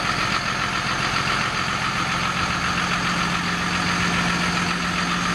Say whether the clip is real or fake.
real